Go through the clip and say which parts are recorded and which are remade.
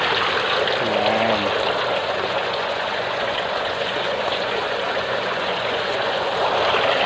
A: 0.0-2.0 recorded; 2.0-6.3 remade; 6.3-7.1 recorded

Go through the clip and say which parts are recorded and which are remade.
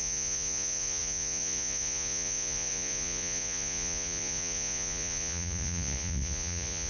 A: 0.0-6.9 remade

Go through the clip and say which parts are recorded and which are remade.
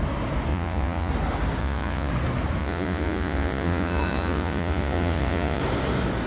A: 0.0-0.5 recorded; 0.5-1.1 remade; 1.1-1.6 recorded; 1.6-2.1 remade; 2.1-2.6 recorded; 2.6-5.6 remade; 5.6-6.3 recorded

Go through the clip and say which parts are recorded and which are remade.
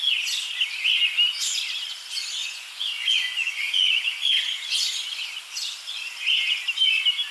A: 0.0-2.4 recorded; 2.4-5.2 remade; 5.2-7.3 recorded